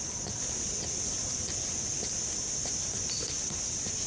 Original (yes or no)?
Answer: yes